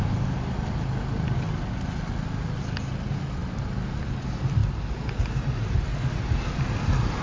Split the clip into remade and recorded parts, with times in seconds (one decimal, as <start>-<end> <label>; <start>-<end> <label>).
0.0-7.2 recorded